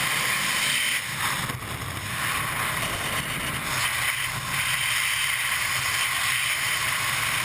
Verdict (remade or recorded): recorded